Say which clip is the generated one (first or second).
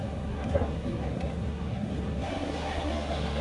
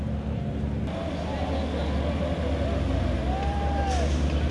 first